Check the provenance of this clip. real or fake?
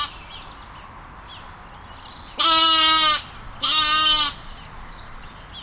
real